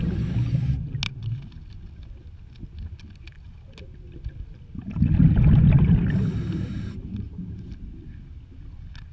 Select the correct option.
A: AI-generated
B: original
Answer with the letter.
B